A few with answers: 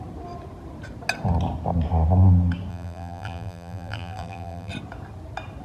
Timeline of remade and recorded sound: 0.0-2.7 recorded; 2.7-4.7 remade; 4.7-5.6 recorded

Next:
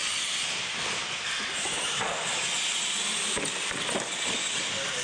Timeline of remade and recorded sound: 0.0-5.0 recorded